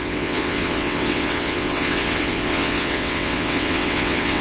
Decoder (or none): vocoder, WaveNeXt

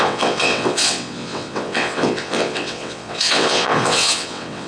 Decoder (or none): vocoder, WaveNeXt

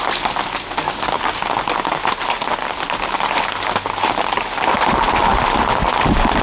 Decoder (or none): none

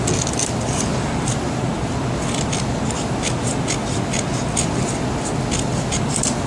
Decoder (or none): none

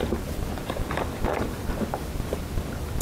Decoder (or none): none